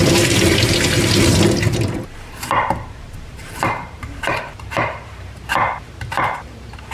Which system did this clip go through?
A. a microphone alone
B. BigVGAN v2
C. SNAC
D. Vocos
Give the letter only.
B